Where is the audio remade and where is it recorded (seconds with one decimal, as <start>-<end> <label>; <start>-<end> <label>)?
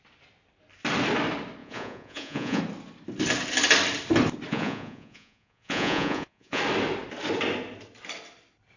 0.0-1.6 recorded; 1.6-2.6 remade; 2.6-4.5 recorded; 4.5-6.6 remade; 6.6-8.8 recorded